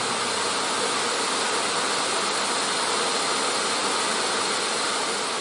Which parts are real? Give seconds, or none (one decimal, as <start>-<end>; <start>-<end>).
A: 0.0-5.4